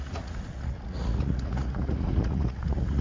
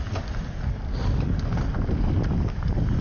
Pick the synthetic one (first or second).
first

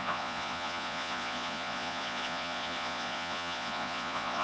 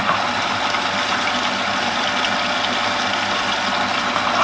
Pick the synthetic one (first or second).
first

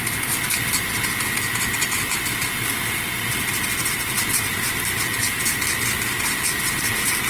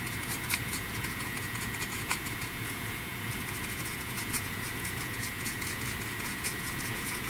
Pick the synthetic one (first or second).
second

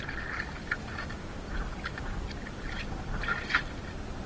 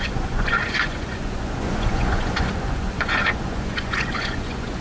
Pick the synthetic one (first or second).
second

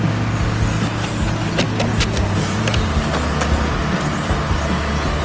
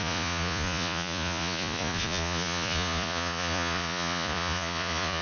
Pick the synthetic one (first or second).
second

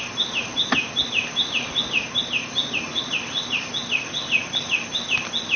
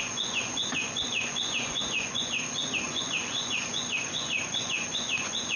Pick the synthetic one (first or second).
second